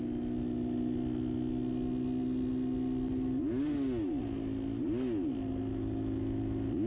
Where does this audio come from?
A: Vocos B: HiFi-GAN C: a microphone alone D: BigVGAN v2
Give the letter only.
C